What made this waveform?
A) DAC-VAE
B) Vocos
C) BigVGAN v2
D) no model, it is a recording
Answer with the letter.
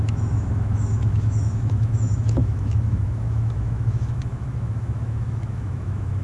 A